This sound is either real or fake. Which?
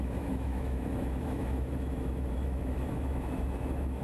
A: fake